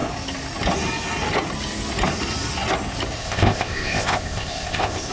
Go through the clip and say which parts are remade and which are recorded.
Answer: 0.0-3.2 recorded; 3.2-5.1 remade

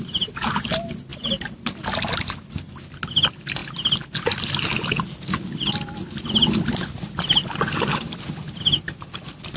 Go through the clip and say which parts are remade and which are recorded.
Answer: 0.0-9.6 recorded